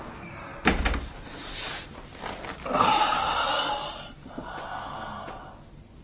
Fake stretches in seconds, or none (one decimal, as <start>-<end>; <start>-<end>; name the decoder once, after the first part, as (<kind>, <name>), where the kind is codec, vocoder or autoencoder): none